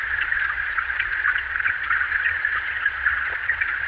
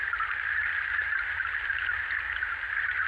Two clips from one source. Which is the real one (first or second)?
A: second